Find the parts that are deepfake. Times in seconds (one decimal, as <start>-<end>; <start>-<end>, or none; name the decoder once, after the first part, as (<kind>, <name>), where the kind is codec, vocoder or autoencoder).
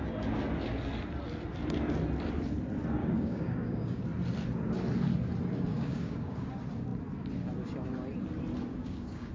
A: 3.0-4.0 (codec, DAC); 5.7-6.5; 8.7-9.3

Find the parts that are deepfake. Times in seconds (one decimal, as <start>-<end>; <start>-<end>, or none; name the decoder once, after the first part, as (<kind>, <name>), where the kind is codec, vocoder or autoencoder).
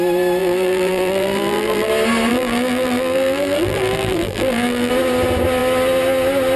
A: 0.4-1.9 (vocoder, BigVGAN v2); 2.3-4.9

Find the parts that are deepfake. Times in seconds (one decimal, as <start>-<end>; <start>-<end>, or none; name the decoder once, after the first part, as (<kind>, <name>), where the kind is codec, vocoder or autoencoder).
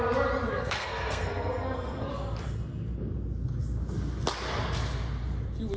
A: 0.5-2.1 (codec, SNAC)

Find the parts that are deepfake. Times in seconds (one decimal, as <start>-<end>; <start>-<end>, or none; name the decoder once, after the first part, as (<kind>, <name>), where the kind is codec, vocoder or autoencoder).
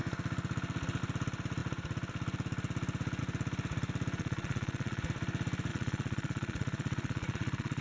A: 4.2-5.0 (vocoder, Vocos); 5.7-7.8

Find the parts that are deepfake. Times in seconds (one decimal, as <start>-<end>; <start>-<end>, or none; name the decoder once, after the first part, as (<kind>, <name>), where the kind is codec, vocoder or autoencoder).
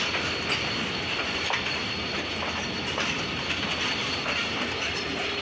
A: 1.8-3.1 (vocoder, BigVGAN v2); 4.0-5.4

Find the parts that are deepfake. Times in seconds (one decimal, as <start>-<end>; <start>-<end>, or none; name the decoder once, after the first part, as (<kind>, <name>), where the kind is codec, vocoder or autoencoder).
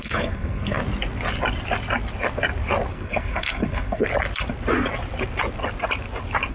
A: 0.0-0.8 (codec, SNAC); 2.9-4.1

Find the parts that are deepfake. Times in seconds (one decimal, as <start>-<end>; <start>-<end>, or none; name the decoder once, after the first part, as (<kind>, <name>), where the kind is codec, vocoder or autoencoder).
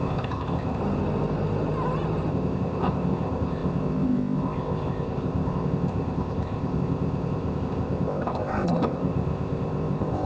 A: 0.0-0.8 (codec, ZipCodec); 2.3-10.3